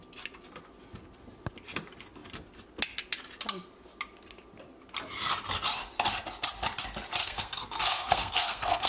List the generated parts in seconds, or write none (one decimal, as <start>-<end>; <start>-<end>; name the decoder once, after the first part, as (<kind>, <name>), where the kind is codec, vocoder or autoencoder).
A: 7.2-8.9 (codec, SNAC)